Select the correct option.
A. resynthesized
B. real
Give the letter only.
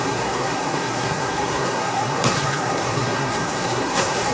A